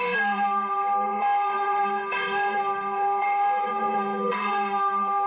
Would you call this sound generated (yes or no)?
yes